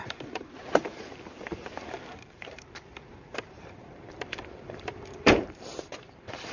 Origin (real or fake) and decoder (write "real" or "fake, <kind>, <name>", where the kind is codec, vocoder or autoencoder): fake, vocoder, BigVGAN v2